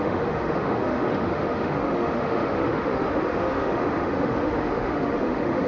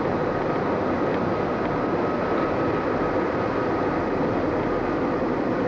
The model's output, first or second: first